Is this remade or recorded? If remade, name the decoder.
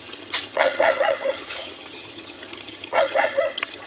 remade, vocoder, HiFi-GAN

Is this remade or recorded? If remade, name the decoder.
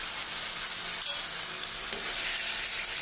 recorded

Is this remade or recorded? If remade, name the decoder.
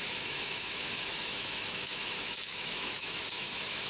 remade, autoencoder, DAC-VAE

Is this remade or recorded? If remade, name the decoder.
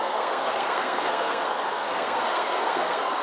remade, codec, SNAC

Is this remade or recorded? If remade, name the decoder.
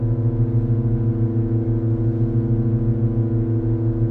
recorded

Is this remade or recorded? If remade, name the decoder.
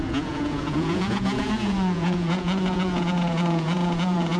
remade, vocoder, Vocos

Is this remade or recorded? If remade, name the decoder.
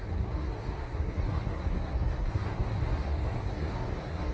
remade, codec, SNAC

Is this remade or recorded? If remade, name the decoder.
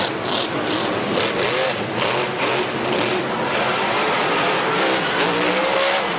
recorded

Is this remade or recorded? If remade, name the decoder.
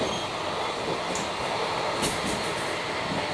recorded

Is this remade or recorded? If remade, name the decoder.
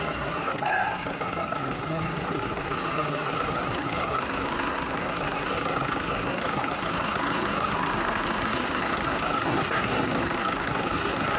remade, codec, SNAC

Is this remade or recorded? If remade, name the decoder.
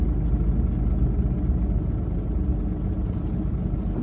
recorded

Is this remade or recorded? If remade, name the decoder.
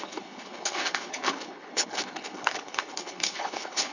remade, codec, HILCodec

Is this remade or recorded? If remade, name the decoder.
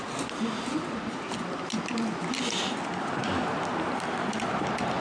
recorded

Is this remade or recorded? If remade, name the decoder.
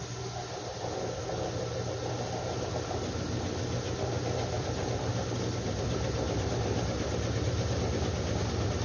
recorded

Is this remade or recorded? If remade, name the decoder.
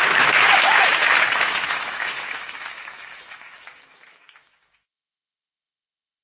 remade, autoencoder, DAC-VAE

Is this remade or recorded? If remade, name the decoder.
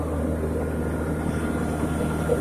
recorded